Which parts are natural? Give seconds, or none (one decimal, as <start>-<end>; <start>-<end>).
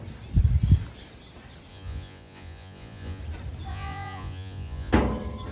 0.0-1.7; 3.2-3.7; 4.9-5.5